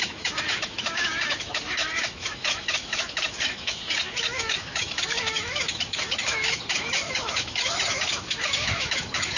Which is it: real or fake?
fake